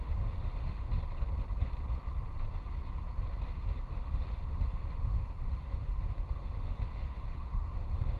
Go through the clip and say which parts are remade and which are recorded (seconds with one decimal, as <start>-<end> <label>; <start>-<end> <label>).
0.0-0.9 remade; 0.9-3.9 recorded; 3.9-8.2 remade